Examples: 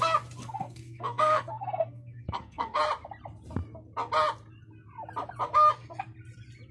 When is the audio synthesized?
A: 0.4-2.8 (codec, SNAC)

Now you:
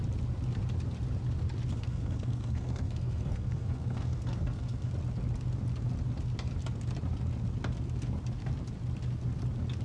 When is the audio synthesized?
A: 1.7-4.9 (codec, SNAC)